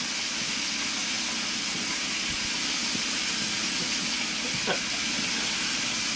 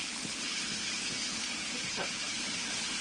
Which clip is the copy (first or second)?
second